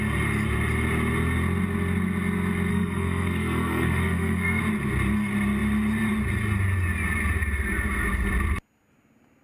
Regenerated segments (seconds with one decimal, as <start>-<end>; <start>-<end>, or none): 2.7-4.6